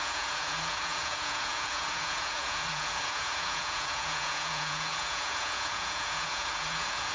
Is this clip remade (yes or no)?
yes